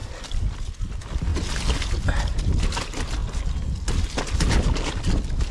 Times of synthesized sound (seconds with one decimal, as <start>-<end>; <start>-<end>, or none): none